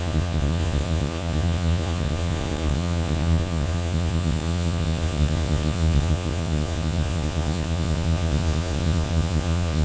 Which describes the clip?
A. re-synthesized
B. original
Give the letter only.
A